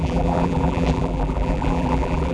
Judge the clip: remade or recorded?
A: remade